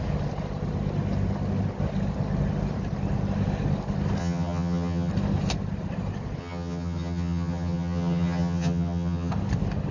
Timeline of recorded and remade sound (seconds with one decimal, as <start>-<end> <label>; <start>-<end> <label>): 0.0-4.2 recorded; 4.2-5.1 remade; 5.1-6.4 recorded; 6.4-9.3 remade; 9.3-9.9 recorded